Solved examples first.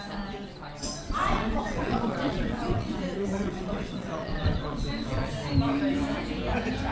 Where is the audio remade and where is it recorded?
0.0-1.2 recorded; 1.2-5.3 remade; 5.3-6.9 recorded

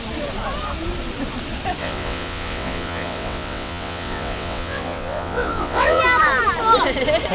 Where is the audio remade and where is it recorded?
0.0-1.8 recorded; 1.8-6.0 remade; 6.0-7.3 recorded

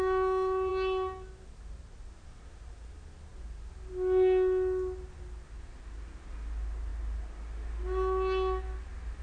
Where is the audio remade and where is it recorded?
0.0-9.2 recorded

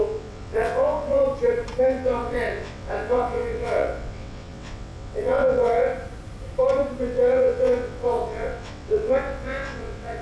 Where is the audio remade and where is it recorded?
0.0-1.2 remade; 1.2-1.8 recorded; 1.8-5.9 remade; 5.9-7.0 recorded; 7.0-10.2 remade